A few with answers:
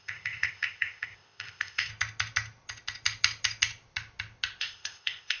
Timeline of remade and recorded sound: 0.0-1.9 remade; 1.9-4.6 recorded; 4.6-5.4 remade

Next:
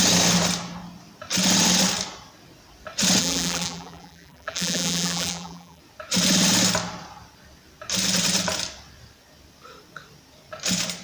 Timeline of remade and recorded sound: 0.0-3.2 recorded; 3.2-5.8 remade; 5.8-11.0 recorded